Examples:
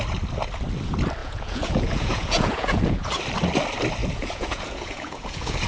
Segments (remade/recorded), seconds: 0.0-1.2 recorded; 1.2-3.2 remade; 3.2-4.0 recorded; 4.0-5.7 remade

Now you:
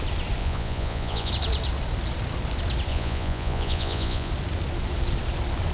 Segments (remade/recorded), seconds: 0.0-0.4 recorded; 0.4-1.3 remade; 1.3-2.9 recorded; 2.9-4.3 remade; 4.3-5.7 recorded